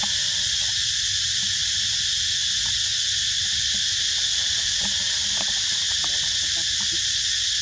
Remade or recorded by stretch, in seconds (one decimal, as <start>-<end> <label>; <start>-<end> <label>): 0.0-7.6 recorded